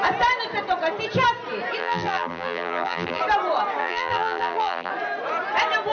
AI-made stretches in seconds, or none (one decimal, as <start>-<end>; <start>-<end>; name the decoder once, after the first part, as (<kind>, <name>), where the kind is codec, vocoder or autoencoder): 1.8-3.2 (vocoder, BigVGAN v2); 3.8-4.9